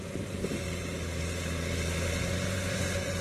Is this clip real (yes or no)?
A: no